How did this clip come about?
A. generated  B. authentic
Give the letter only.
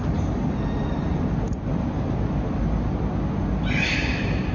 B